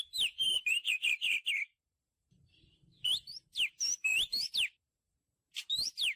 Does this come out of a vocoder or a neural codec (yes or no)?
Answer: yes